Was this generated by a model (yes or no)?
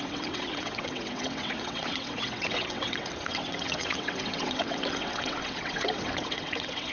yes